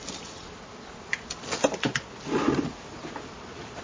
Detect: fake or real real